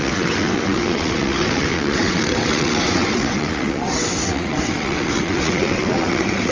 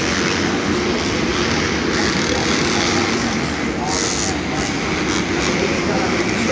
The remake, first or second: first